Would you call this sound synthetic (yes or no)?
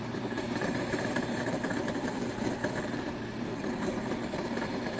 yes